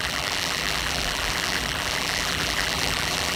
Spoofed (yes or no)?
yes